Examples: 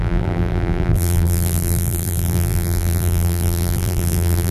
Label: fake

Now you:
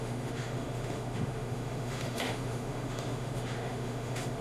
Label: fake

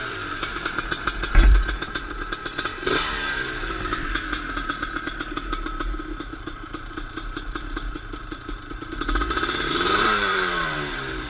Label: fake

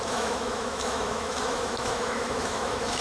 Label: fake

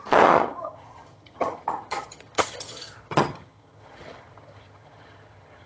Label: fake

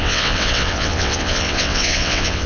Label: fake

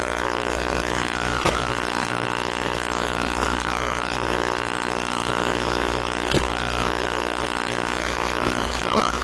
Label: fake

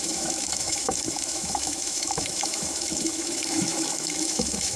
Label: fake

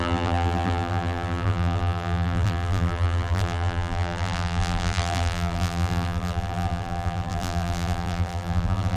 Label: fake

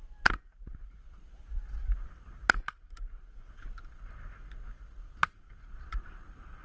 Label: real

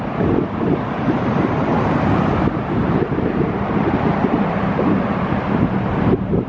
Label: fake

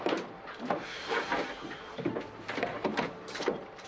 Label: fake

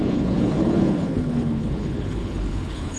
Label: fake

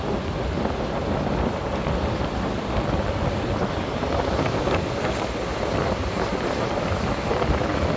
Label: real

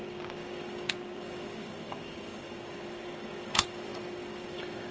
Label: fake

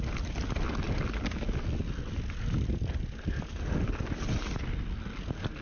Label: real